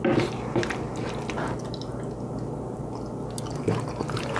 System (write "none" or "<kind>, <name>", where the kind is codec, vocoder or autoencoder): none